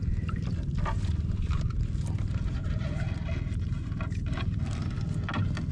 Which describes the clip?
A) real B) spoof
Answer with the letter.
A